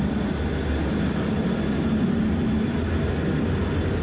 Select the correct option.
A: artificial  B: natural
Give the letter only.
B